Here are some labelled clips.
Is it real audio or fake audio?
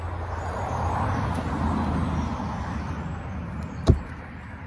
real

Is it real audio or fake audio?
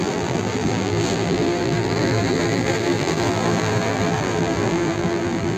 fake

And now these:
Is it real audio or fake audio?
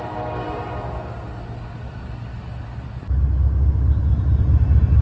real